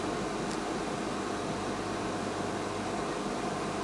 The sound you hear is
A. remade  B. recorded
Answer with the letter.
B